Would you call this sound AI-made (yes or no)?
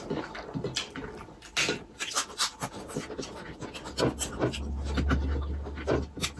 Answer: no